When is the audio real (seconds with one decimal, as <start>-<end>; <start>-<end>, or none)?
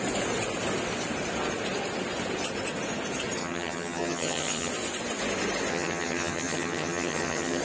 0.0-3.4; 4.7-5.7